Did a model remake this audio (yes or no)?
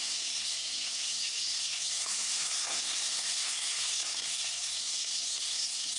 yes